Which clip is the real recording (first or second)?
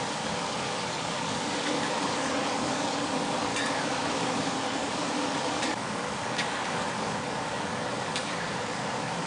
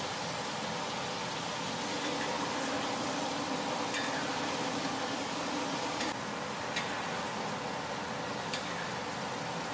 second